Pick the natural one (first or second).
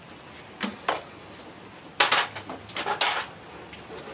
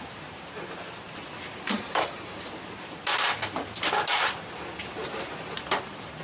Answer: first